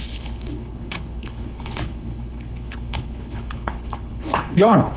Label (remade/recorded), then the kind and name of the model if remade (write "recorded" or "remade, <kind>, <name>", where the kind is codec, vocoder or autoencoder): remade, codec, HILCodec